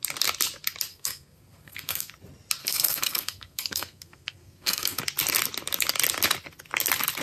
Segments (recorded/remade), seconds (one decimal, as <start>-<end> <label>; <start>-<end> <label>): 0.0-0.9 recorded; 0.9-2.1 remade; 2.1-2.6 recorded; 2.6-5.0 remade; 5.0-7.2 recorded